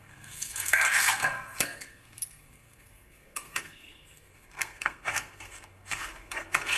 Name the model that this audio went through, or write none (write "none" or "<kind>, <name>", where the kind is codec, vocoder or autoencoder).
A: codec, SNAC